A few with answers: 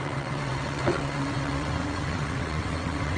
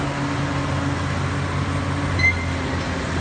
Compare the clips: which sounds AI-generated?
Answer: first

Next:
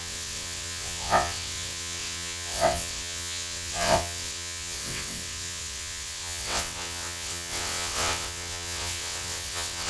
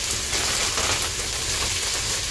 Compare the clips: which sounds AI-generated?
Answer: first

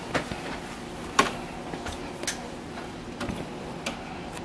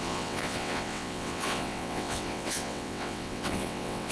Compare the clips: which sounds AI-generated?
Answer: second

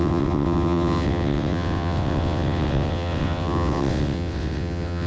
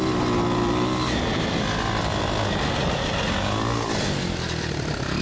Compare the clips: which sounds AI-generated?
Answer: first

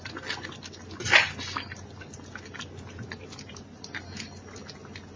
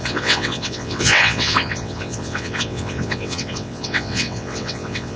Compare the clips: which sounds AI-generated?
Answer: second